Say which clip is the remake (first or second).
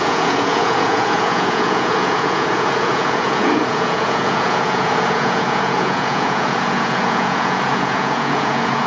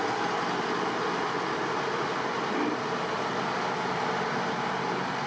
first